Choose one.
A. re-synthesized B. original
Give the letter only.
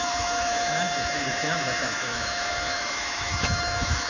A